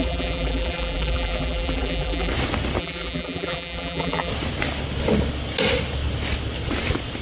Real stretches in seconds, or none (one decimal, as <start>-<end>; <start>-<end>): 2.3-2.8; 4.3-7.2